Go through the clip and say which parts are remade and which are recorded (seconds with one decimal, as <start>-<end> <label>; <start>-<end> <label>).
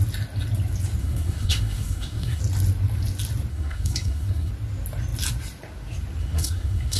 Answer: 0.0-1.0 recorded; 1.0-2.4 remade; 2.4-3.5 recorded; 3.5-4.5 remade; 4.5-6.2 recorded; 6.2-7.0 remade